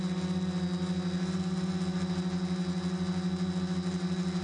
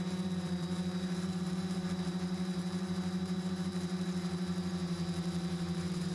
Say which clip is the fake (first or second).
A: second